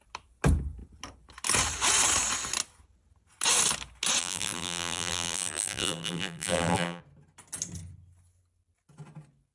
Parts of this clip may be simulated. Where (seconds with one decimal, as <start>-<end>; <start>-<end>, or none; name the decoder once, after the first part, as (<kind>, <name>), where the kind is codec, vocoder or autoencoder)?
4.2-7.0 (vocoder, BigVGAN v2)